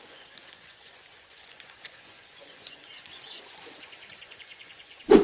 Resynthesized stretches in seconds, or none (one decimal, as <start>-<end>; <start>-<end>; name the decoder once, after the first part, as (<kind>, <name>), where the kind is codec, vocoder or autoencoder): 0.0-5.2 (vocoder, Vocos)